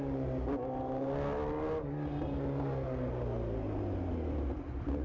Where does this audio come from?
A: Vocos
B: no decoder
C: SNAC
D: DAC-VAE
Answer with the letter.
B